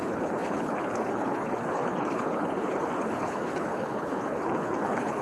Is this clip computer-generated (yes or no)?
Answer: yes